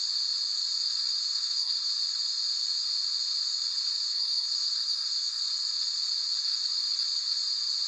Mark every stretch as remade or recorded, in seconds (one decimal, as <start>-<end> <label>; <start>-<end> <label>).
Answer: 0.0-1.2 recorded; 1.2-1.9 remade; 1.9-4.1 recorded; 4.1-5.4 remade; 5.4-7.9 recorded